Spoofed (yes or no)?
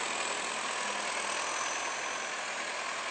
no